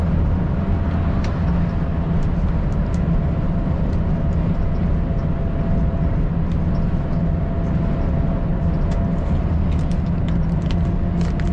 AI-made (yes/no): no